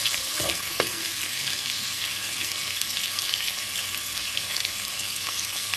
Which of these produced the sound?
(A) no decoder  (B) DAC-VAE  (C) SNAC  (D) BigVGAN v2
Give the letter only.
C